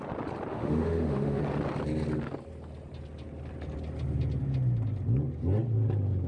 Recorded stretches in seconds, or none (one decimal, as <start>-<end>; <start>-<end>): 0.0-0.5; 1.4-6.3